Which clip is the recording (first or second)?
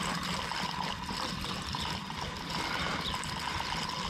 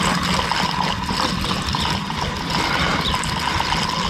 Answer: second